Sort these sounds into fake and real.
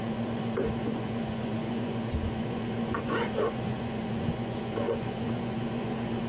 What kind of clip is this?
fake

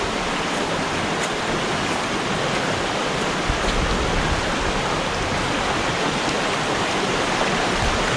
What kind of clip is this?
real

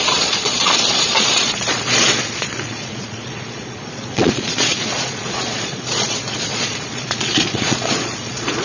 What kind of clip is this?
fake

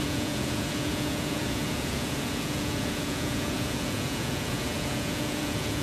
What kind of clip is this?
fake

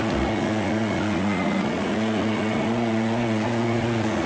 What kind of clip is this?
fake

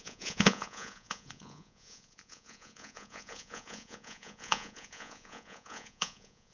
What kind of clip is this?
fake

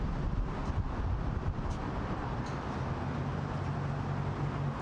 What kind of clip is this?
real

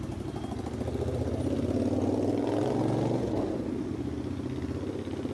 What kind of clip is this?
real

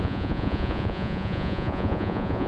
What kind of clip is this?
fake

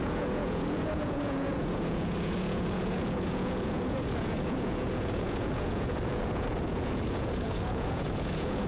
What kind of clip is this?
fake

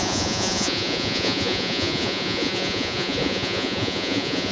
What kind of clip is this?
fake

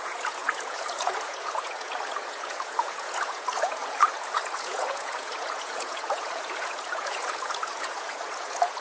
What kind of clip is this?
fake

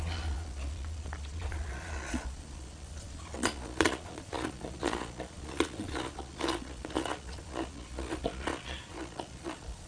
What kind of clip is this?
fake